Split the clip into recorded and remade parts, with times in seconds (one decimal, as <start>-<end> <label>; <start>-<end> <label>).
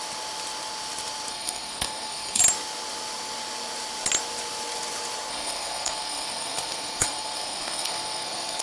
0.0-1.3 recorded; 1.3-2.4 remade; 2.4-5.3 recorded; 5.3-8.6 remade